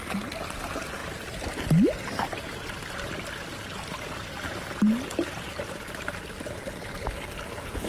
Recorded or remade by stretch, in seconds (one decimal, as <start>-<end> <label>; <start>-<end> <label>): 0.0-7.9 recorded